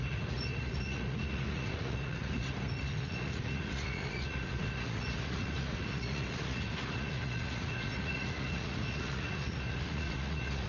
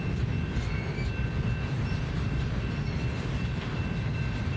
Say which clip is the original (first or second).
second